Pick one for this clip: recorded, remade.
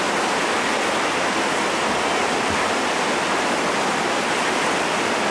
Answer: recorded